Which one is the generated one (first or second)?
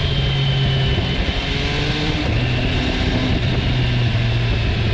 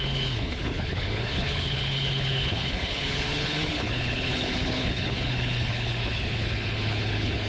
second